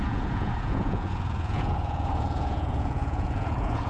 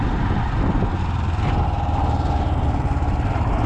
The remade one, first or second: first